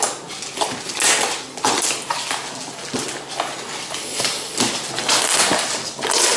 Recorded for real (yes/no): yes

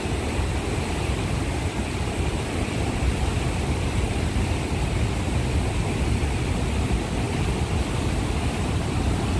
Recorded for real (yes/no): yes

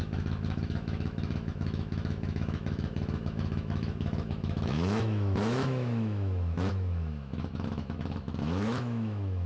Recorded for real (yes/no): no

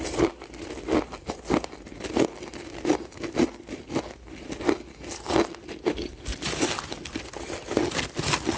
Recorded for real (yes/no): yes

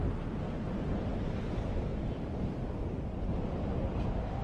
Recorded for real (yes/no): yes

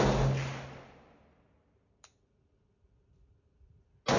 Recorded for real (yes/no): yes